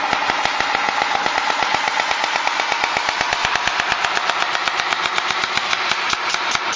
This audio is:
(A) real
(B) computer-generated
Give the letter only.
A